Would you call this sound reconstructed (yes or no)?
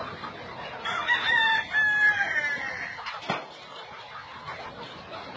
yes